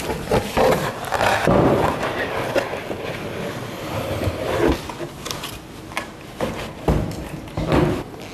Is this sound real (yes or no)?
yes